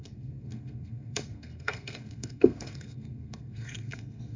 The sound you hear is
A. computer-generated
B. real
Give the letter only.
A